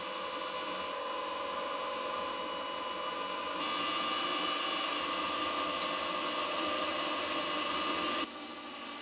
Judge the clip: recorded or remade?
recorded